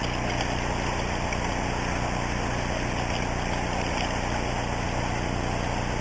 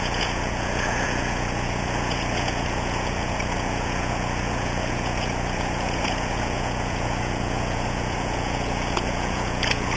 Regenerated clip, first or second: second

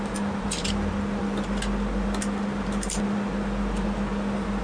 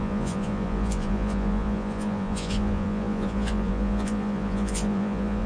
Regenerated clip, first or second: second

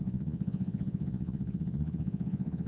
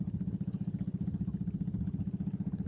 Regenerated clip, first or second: first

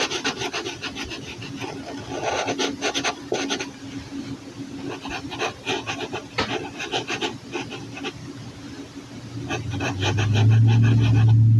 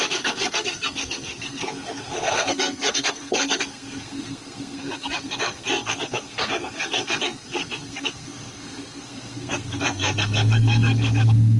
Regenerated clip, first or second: second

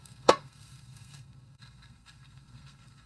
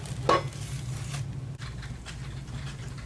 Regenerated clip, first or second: first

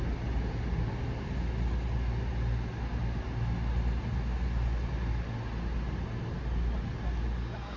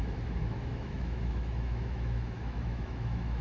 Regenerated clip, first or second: second